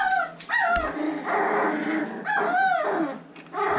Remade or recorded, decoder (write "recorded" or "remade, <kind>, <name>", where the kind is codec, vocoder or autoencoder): recorded